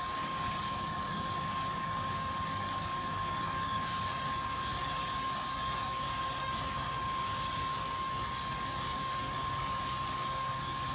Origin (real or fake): fake